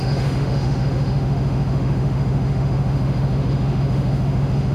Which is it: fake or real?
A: fake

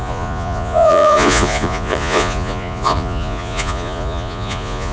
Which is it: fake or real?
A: fake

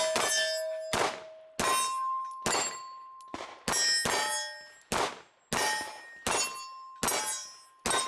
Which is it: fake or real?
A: real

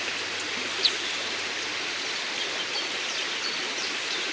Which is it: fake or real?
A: real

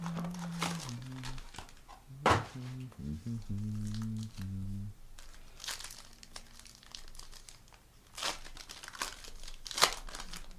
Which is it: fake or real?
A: real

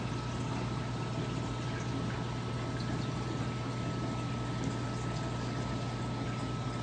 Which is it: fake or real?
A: real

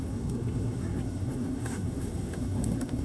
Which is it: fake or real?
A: fake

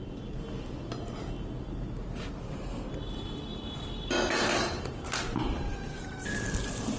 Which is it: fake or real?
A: real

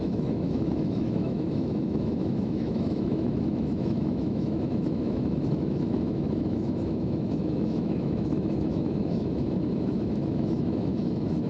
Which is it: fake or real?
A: fake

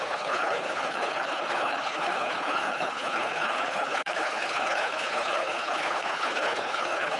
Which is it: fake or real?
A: fake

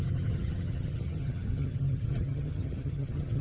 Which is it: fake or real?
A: fake